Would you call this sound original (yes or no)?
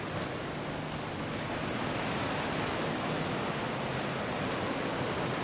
yes